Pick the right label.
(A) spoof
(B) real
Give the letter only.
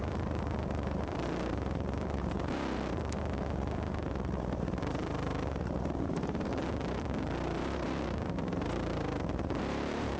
A